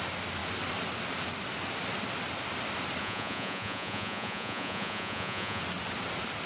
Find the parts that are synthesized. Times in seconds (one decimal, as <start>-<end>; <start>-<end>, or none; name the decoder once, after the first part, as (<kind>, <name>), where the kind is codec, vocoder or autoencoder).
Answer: 3.0-5.6 (vocoder, Vocos)